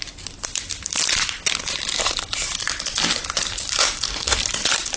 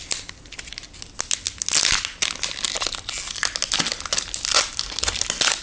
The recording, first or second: second